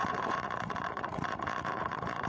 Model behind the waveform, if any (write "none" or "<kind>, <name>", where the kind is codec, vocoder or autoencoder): vocoder, Vocos